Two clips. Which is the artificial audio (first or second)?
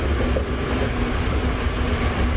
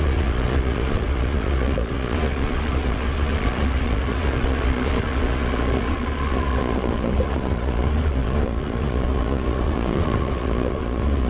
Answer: second